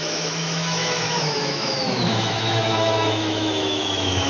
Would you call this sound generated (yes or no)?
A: yes